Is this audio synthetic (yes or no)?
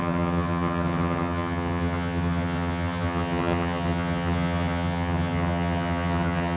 yes